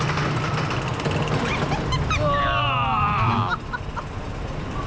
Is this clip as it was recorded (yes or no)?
yes